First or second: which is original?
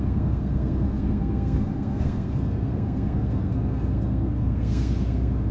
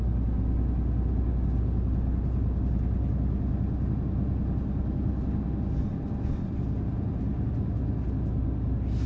second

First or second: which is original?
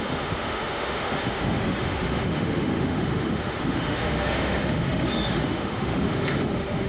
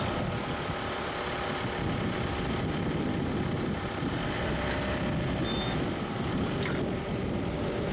second